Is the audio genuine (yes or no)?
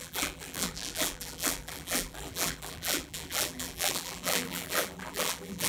no